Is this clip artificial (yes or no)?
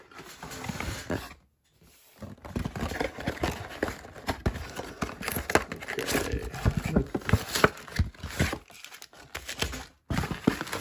no